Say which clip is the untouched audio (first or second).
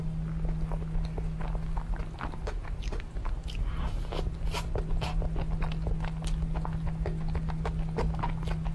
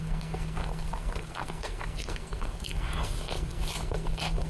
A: first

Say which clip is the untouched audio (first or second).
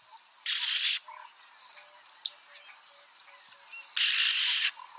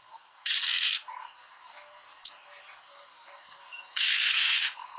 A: first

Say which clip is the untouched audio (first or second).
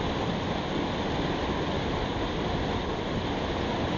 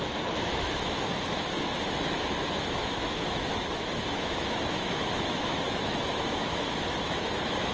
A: first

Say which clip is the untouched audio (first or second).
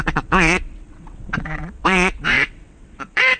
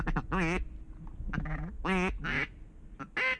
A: second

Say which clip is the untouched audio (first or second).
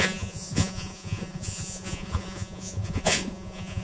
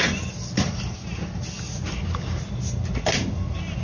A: second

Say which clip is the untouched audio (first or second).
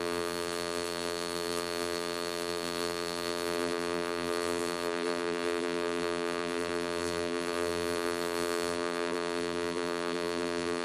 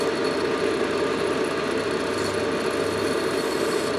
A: second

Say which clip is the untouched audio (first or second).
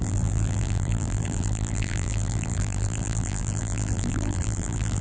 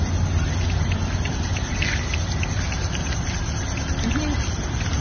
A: second